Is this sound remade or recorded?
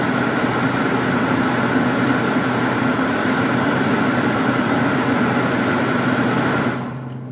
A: recorded